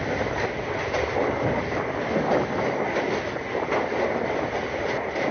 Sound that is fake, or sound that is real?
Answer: real